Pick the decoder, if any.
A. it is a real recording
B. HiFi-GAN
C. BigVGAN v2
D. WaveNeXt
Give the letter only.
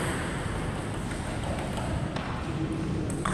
A